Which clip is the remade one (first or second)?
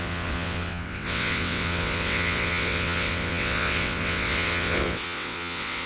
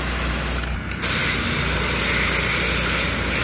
first